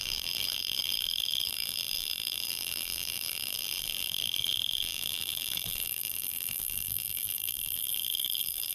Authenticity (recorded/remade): remade